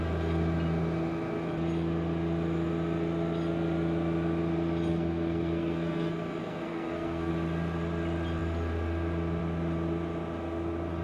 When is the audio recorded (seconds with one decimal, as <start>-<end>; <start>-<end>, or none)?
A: 0.0-4.9; 7.3-11.0